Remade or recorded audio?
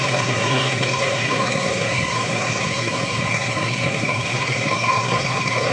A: remade